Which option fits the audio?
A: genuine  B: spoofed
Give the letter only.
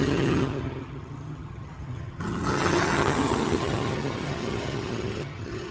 B